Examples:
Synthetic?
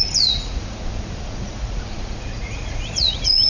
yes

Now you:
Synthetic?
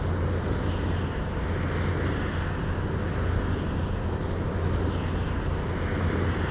no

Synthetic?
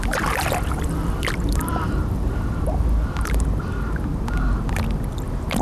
yes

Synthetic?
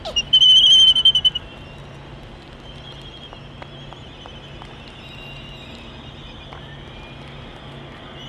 no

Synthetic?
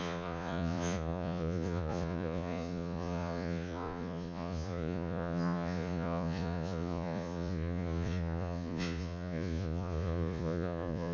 yes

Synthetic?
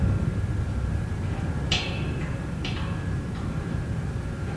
yes